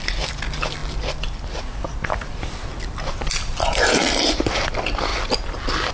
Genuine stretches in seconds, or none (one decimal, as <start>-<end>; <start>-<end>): 0.0-5.9